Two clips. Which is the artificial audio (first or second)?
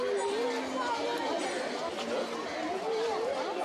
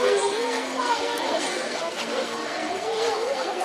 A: second